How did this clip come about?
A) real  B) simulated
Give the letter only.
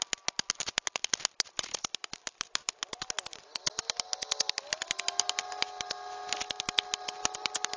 A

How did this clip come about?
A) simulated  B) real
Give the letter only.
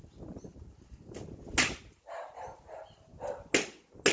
B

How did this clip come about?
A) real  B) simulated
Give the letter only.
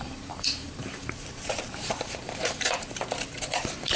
B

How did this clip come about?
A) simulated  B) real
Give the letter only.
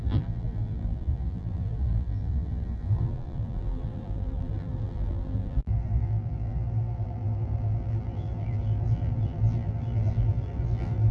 A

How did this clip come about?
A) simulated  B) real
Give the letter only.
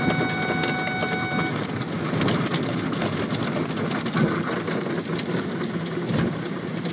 B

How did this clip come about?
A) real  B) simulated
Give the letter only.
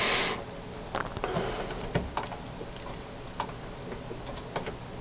A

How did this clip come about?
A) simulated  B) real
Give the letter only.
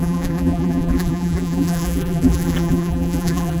A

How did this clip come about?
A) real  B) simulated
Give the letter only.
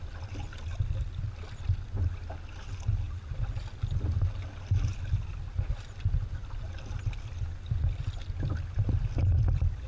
A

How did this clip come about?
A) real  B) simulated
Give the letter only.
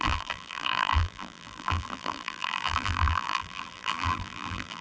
B